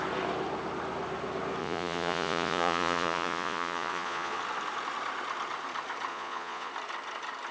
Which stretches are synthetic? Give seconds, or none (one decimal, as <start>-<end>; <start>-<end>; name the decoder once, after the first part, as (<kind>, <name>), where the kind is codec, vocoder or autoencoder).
1.6-4.4 (vocoder, Vocos); 6.1-6.7